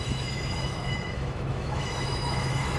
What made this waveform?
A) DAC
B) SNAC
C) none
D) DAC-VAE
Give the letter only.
D